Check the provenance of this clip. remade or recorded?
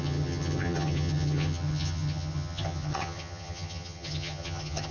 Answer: remade